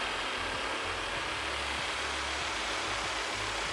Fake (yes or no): no